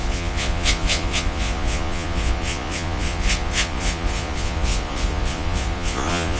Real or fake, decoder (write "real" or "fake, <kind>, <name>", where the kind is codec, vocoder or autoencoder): fake, vocoder, Vocos